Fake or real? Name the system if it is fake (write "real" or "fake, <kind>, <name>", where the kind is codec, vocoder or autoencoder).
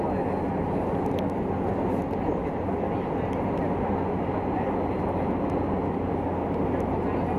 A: real